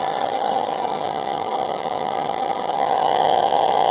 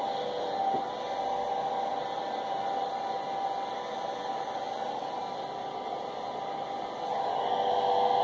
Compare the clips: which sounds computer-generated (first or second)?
first